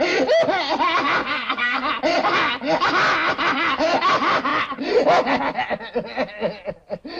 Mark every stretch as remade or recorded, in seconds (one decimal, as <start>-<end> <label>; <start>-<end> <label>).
0.0-1.2 recorded; 1.2-1.9 remade; 1.9-7.2 recorded

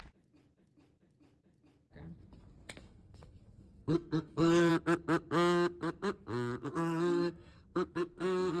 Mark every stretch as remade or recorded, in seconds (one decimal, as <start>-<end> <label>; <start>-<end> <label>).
0.0-2.8 recorded; 2.8-4.7 remade; 4.7-6.6 recorded; 6.6-8.6 remade

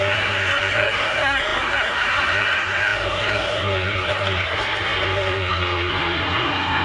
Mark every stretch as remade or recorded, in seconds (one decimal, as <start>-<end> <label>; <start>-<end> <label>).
0.0-6.8 remade